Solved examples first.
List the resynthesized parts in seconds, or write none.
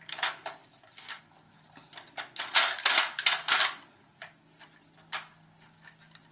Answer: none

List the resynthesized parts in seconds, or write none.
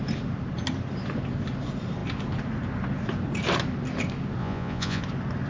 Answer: 4.4-5.0 (vocoder, Vocos)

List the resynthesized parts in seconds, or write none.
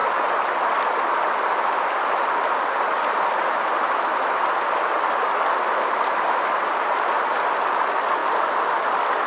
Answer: none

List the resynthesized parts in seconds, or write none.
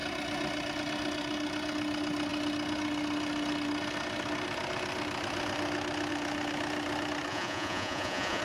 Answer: 7.3-8.4 (vocoder, Vocos)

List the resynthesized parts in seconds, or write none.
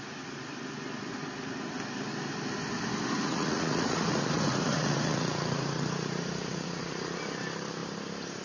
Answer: 3.2-7.2 (vocoder, Vocos)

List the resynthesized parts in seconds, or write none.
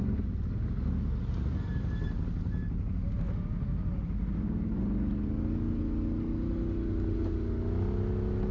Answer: none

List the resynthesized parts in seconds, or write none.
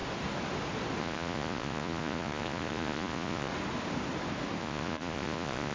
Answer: 1.0-3.5 (vocoder, Vocos); 4.6-5.7